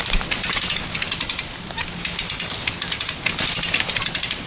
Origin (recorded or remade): recorded